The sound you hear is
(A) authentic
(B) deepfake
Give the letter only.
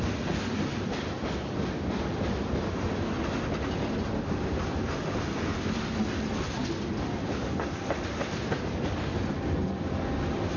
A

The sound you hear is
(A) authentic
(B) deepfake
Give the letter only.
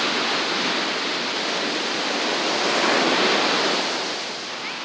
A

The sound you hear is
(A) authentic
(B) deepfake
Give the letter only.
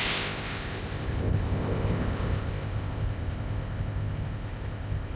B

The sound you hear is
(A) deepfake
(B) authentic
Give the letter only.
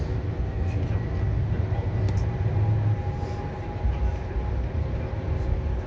B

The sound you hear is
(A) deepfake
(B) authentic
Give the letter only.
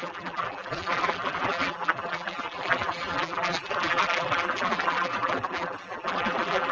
A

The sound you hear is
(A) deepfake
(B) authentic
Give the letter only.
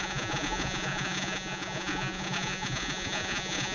A